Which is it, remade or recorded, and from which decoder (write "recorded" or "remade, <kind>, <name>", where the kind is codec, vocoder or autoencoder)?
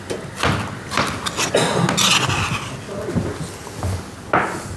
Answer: recorded